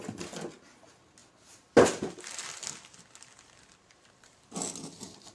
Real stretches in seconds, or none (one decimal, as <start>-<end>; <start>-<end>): 0.0-5.3